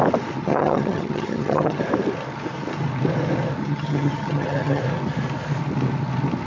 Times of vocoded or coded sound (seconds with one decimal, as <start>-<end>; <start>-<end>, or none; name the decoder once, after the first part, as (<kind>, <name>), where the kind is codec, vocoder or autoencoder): 0.4-1.8 (vocoder, HiFi-GAN); 3.6-4.8